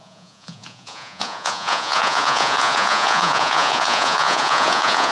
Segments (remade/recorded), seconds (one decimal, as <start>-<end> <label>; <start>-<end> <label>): 0.0-5.1 remade